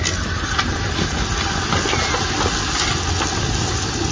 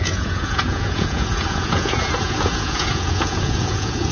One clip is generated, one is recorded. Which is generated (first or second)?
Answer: second